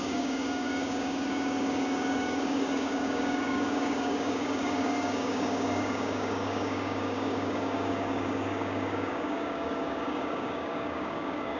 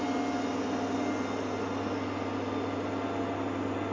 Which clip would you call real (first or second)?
second